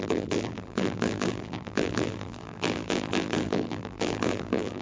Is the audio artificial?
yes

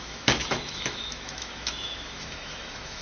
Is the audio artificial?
yes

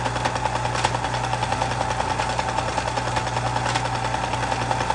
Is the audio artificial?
no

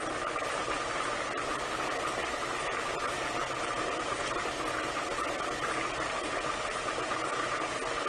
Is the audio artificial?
no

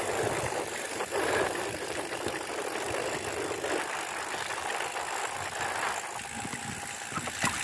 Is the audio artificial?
no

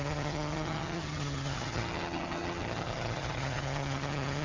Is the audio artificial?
yes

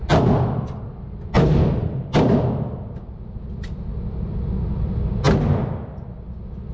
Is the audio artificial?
no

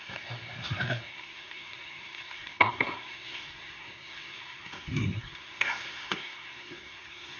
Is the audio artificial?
yes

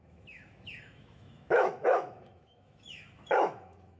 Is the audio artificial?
yes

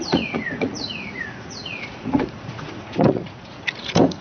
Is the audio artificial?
yes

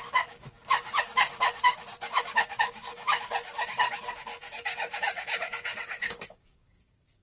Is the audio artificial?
yes